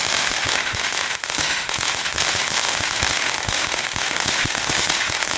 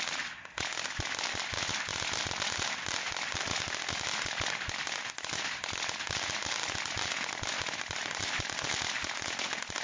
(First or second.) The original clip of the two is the second